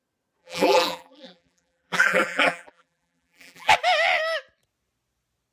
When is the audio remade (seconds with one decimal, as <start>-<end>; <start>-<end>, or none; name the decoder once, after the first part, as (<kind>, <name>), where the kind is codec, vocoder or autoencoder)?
0.4-3.7 (vocoder, BigVGAN v2)